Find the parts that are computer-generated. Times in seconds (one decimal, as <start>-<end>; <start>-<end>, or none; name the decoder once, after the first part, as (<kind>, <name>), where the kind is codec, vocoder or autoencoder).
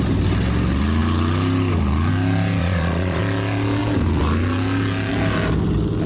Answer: 2.6-3.2 (vocoder, Vocos)